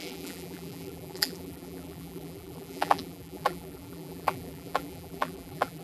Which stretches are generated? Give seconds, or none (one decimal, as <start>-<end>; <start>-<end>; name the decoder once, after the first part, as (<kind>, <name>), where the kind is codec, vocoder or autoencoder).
0.0-5.8 (vocoder, BigVGAN v2)